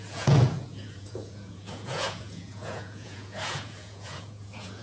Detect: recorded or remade remade